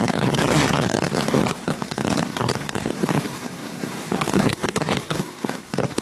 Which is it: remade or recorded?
remade